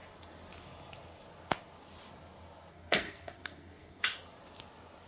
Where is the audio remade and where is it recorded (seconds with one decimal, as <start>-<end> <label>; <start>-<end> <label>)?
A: 0.0-2.7 recorded; 2.7-4.0 remade; 4.0-5.1 recorded